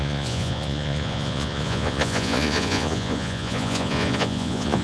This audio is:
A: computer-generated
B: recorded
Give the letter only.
A